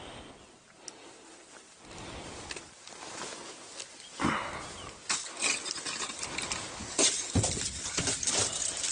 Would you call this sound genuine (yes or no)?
yes